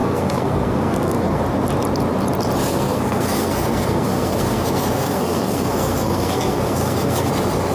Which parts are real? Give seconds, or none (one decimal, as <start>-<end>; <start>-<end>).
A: 1.4-2.7; 7.3-7.7